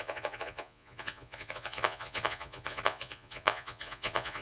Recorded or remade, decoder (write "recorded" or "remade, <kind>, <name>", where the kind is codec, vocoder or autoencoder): remade, vocoder, Vocos